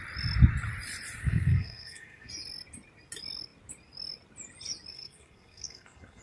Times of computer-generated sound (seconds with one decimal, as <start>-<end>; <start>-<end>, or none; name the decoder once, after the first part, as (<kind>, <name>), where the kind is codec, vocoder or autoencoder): 1.2-2.3 (codec, SNAC); 4.9-6.2